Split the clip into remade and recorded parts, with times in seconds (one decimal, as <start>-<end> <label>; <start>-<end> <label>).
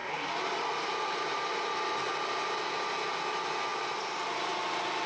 0.0-3.7 recorded; 3.7-4.6 remade; 4.6-5.1 recorded